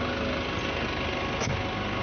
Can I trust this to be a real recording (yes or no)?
yes